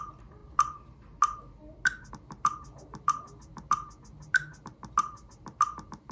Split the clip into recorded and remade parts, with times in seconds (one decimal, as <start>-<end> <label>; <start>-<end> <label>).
0.0-6.1 recorded